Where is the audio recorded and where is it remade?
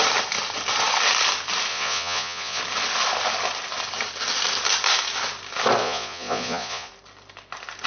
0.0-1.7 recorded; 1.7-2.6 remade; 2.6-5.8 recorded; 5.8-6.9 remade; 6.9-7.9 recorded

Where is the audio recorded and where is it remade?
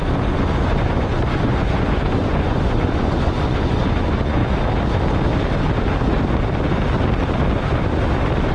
0.0-4.4 remade; 4.4-8.5 recorded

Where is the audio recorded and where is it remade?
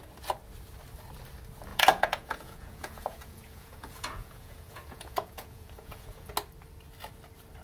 0.0-1.7 recorded; 1.7-6.3 remade; 6.3-7.6 recorded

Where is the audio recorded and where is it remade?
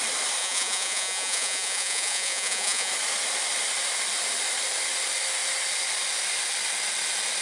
0.0-0.4 recorded; 0.4-2.9 remade; 2.9-7.4 recorded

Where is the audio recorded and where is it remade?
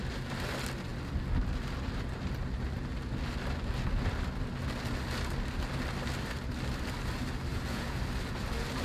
0.0-7.5 recorded; 7.5-8.0 remade; 8.0-8.8 recorded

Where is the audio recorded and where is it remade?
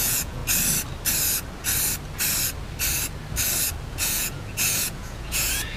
0.0-0.4 remade; 0.4-3.9 recorded; 3.9-5.8 remade